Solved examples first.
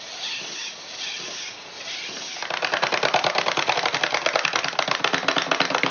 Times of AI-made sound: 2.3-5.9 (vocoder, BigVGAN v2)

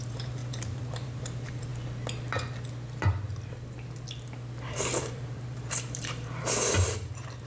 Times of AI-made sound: 0.0-1.7 (vocoder, BigVGAN v2); 4.7-7.5

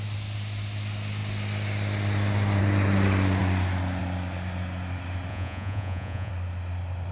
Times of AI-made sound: 5.3-6.3 (vocoder, Vocos)